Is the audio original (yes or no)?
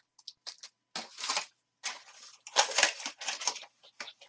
yes